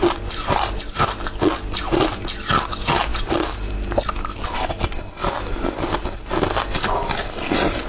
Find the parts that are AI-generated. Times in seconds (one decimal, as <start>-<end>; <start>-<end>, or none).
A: none